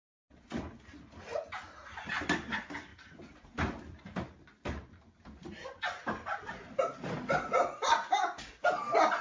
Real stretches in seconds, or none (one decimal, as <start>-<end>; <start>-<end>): 0.0-9.2